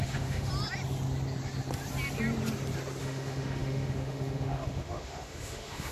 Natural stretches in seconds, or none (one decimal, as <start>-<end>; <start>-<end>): 0.5-3.0